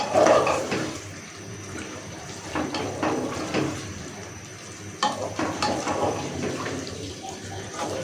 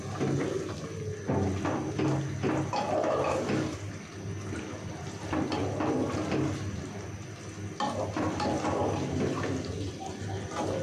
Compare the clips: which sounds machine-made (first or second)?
first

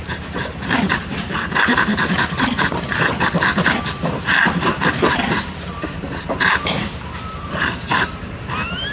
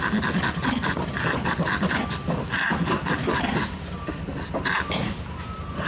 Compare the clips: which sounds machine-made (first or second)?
first